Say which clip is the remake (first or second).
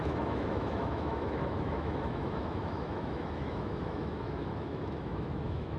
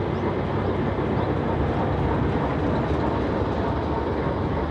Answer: first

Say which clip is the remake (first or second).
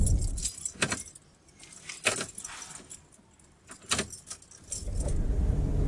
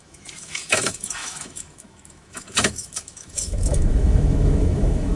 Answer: second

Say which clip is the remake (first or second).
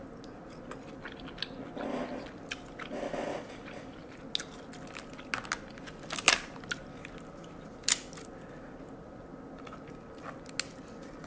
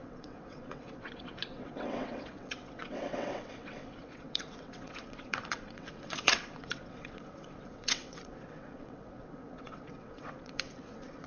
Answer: second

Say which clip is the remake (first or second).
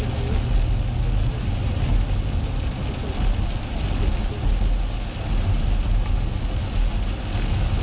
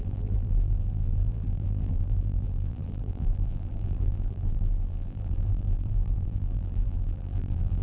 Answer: second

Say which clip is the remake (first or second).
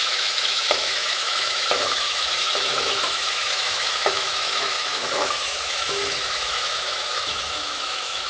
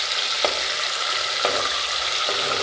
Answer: first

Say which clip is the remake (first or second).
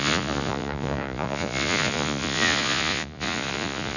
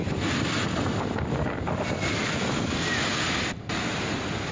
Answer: first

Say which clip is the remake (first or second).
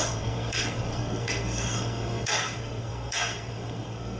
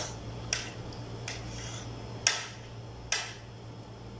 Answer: first